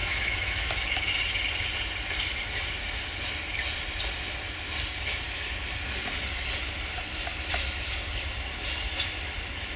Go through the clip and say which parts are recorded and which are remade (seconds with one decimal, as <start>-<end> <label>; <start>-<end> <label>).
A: 0.0-1.1 remade; 1.1-9.8 recorded